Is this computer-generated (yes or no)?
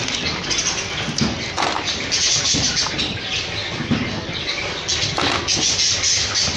no